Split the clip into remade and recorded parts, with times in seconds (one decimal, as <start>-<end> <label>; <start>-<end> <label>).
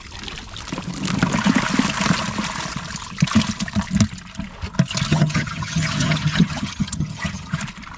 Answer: 0.0-5.1 recorded; 5.1-7.6 remade; 7.6-8.0 recorded